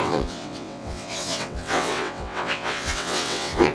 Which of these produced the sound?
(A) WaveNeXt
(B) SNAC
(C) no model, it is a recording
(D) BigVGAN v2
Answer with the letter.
A